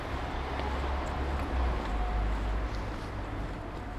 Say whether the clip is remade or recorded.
recorded